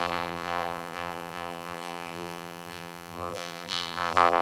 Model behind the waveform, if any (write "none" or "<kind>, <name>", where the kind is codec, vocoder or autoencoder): vocoder, BigVGAN v2